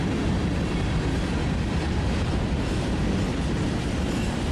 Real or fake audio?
real